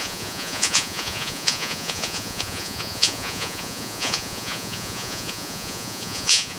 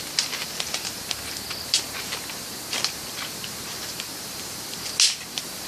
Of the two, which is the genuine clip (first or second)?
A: second